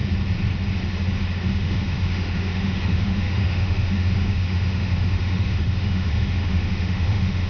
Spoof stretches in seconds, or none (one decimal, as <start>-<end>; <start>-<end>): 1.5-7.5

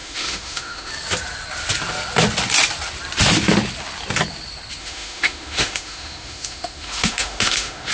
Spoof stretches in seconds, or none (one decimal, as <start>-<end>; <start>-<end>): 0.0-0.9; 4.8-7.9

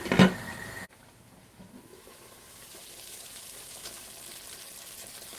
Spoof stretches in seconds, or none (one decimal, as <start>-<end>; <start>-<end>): 1.0-4.1

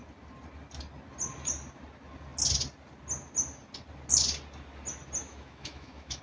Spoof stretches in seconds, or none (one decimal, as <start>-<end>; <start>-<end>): 5.2-6.2

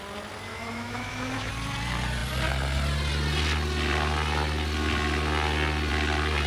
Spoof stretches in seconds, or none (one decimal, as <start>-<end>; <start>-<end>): 0.5-1.5